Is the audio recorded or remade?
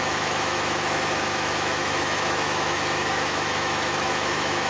remade